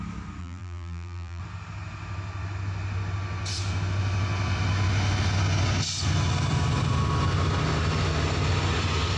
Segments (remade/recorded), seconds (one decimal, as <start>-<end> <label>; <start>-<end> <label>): 0.0-0.4 recorded; 0.4-1.4 remade; 1.4-9.2 recorded